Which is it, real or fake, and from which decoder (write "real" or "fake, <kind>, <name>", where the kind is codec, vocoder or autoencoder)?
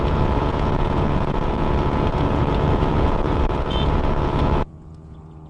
fake, vocoder, Vocos